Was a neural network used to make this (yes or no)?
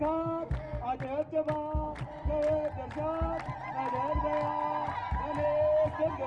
no